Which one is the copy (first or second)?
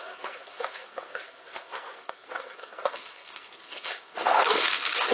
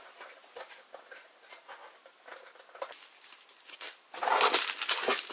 first